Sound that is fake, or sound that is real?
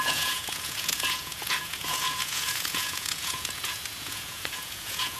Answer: fake